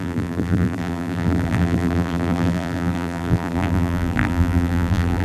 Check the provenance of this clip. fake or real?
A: fake